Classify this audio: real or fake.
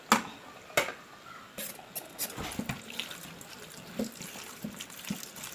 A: real